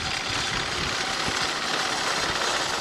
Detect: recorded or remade recorded